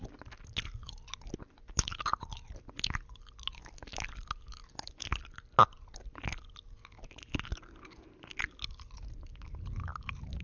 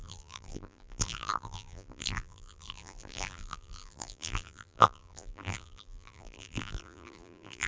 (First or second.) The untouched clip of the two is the first